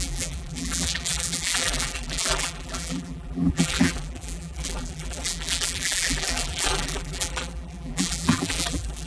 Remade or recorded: remade